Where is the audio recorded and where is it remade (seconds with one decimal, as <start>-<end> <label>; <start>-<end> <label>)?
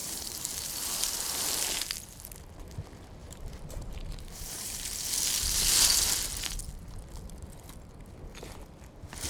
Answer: 0.0-0.7 remade; 0.7-3.2 recorded; 3.2-5.0 remade; 5.0-9.3 recorded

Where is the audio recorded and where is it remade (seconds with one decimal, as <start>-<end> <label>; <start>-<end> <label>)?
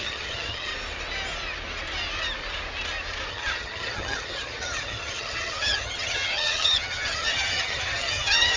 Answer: 0.0-0.7 remade; 0.7-3.3 recorded; 3.3-8.6 remade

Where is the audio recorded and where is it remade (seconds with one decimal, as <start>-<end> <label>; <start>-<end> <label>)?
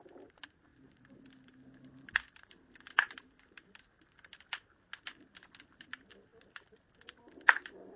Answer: 0.0-0.7 recorded; 0.7-4.3 remade; 4.3-8.0 recorded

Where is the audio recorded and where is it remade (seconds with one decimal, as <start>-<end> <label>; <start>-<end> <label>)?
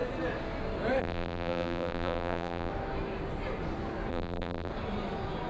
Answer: 0.0-1.0 recorded; 1.0-2.7 remade; 2.7-4.1 recorded; 4.1-4.7 remade; 4.7-5.5 recorded